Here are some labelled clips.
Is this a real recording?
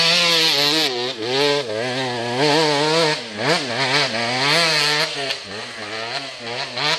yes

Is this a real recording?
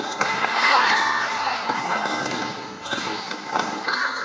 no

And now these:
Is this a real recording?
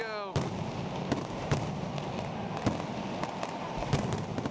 yes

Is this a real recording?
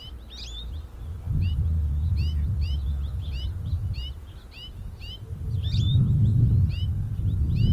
yes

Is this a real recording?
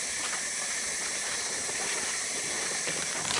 yes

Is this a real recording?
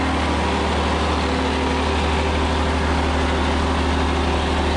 yes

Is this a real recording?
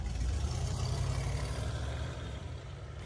no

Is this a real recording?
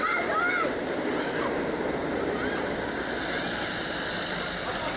yes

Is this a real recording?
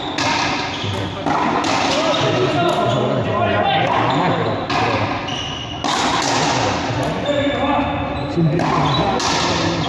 yes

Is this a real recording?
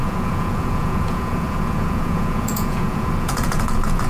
no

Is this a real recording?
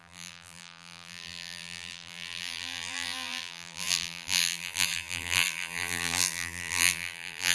no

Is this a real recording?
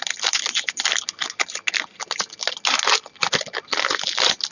yes